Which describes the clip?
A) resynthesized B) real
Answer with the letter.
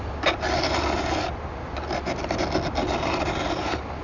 B